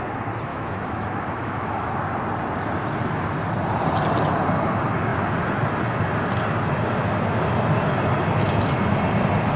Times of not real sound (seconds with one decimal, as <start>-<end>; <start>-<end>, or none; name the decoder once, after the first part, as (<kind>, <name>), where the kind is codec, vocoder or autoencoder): 0.5-1.9 (autoencoder, DAC-VAE)